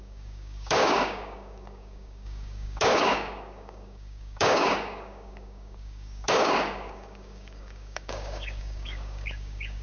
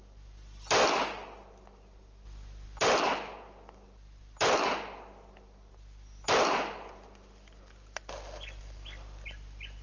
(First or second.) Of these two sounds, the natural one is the second